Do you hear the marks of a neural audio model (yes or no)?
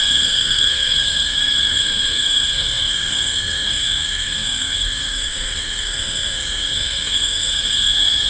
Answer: yes